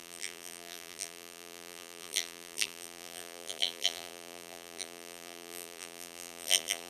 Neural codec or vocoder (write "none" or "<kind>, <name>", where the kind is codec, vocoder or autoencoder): vocoder, BigVGAN v2